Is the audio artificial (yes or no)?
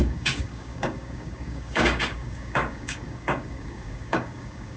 yes